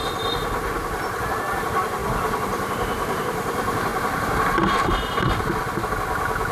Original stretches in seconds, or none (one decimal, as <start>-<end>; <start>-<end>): 0.0-6.5